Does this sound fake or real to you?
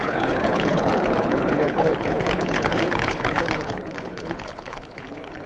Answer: fake